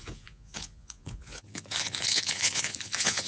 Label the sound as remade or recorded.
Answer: remade